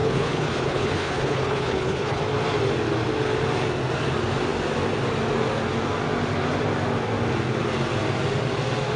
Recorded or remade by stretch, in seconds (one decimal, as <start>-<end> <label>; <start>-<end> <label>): 0.0-2.2 remade; 2.2-9.0 recorded